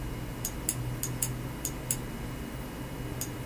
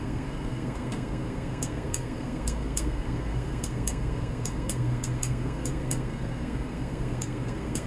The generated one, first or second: second